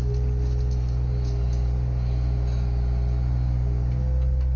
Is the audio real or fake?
real